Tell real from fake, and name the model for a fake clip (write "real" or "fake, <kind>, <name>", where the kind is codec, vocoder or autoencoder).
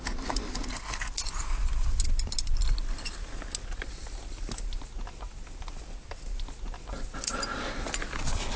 real